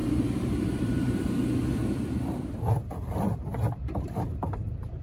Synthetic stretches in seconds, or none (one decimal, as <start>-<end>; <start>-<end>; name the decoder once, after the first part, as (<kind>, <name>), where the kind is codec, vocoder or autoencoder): 0.0-1.2 (vocoder, BigVGAN v2); 1.7-5.0